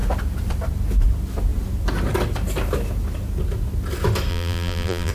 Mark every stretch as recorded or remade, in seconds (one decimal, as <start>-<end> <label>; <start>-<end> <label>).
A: 0.0-4.3 recorded; 4.3-5.1 remade